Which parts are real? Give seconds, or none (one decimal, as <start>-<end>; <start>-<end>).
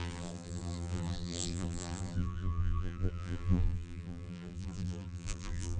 none